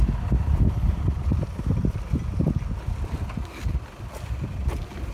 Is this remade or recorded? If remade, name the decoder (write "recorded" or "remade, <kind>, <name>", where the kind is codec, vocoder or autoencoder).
recorded